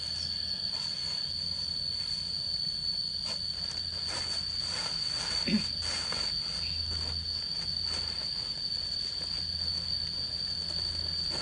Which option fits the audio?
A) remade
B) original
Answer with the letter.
B